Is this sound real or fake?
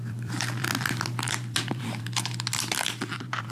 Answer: fake